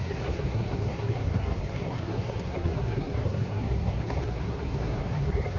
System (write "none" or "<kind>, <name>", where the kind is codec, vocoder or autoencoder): codec, SNAC